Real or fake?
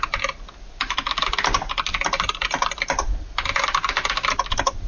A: real